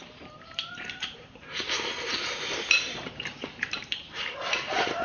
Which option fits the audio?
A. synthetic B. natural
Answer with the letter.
A